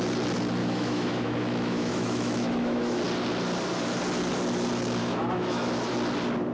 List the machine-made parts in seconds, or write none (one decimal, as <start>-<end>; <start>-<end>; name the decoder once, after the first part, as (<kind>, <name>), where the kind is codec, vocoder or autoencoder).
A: 0.6-3.0 (autoencoder, DAC-VAE); 5.0-5.7